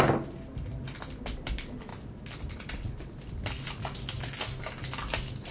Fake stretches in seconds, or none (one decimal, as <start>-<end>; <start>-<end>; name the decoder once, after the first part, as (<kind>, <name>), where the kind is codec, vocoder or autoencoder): none